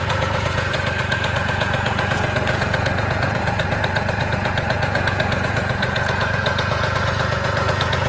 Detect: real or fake fake